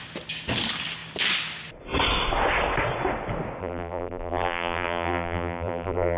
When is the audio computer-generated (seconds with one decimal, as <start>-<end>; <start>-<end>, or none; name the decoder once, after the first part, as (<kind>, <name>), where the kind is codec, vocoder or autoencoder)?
3.6-6.2 (vocoder, BigVGAN v2)